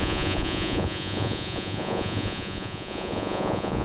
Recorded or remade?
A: remade